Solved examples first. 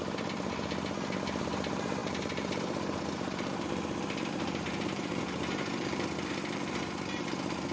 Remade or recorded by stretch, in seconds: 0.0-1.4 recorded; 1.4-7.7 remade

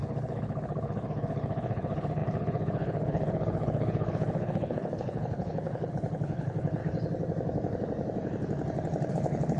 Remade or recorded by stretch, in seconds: 0.0-6.8 remade; 6.8-9.1 recorded; 9.1-9.6 remade

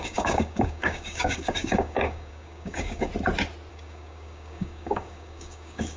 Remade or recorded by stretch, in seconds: 0.0-3.1 remade; 3.1-3.7 recorded; 3.7-6.0 remade

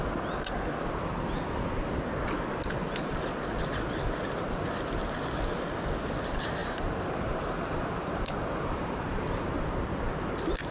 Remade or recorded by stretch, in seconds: 0.0-6.6 recorded; 6.6-9.5 remade; 9.5-10.7 recorded